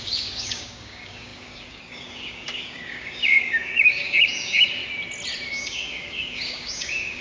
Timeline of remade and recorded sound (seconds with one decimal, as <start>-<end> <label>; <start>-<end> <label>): 0.0-4.8 remade; 4.8-5.5 recorded; 5.5-7.2 remade